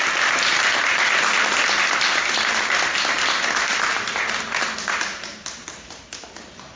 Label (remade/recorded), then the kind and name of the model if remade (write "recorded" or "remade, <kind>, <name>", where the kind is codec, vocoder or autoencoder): recorded